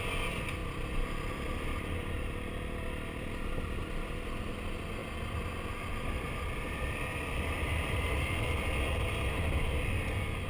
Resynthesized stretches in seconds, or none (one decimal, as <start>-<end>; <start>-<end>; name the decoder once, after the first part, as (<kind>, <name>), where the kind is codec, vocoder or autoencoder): none